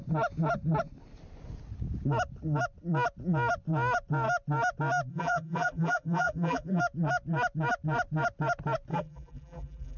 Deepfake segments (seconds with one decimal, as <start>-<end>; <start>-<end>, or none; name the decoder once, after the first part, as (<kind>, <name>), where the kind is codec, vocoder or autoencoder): 5.1-6.8 (vocoder, BigVGAN v2); 8.9-10.0